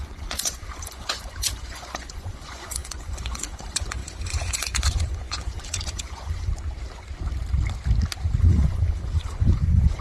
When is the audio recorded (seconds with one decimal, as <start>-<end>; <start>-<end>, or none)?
6.5-8.4